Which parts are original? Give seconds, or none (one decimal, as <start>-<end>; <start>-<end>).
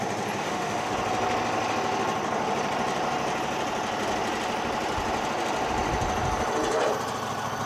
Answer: 0.0-0.4; 0.9-7.7